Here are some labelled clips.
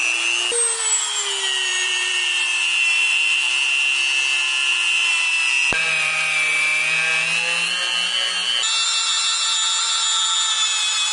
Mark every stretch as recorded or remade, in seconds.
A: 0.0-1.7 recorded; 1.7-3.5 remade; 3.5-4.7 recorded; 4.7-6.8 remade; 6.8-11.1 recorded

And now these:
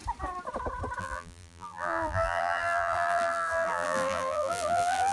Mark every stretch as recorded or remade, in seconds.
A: 0.0-1.0 recorded; 1.0-5.1 remade

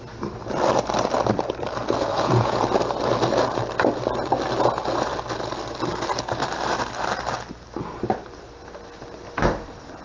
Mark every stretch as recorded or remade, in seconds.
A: 0.0-2.1 recorded; 2.1-2.6 remade; 2.6-10.0 recorded

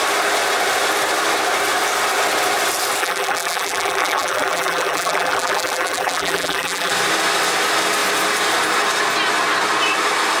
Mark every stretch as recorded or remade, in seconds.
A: 0.0-3.0 recorded; 3.0-6.9 remade; 6.9-10.4 recorded

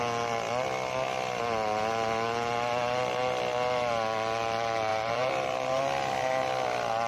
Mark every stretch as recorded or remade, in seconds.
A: 0.0-4.9 recorded; 4.9-5.8 remade; 5.8-7.1 recorded

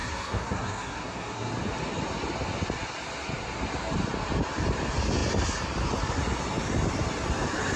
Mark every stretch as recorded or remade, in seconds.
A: 0.0-1.5 remade; 1.5-7.8 recorded

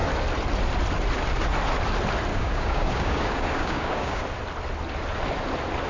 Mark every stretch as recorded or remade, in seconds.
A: 0.0-2.3 recorded; 2.3-4.2 remade; 4.2-5.9 recorded

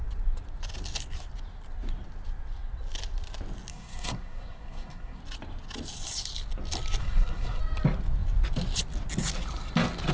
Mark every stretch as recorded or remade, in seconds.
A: 0.0-3.7 recorded; 3.7-5.2 remade; 5.2-7.0 recorded; 7.0-7.6 remade; 7.6-10.1 recorded